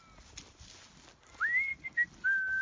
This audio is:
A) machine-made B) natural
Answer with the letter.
B